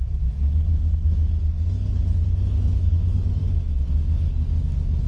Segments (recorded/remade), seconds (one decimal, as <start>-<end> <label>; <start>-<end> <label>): 0.0-3.4 remade; 3.4-3.9 recorded; 3.9-5.1 remade